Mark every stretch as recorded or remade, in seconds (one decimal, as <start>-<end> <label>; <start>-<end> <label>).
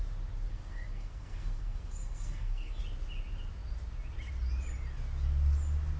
0.0-0.5 recorded; 0.5-2.8 remade; 2.8-6.0 recorded